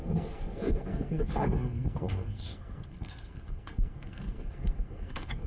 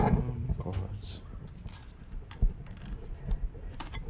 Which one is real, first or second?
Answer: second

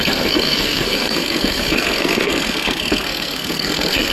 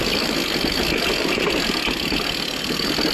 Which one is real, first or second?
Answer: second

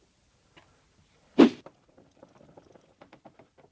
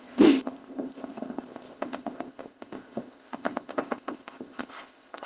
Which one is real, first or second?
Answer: first